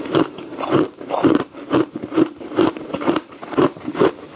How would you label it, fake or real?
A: fake